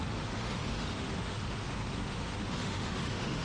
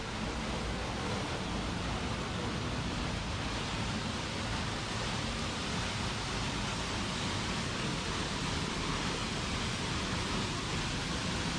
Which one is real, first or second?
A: second